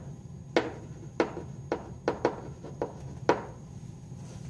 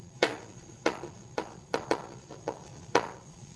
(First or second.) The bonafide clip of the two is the first